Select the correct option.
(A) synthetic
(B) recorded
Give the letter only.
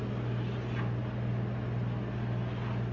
B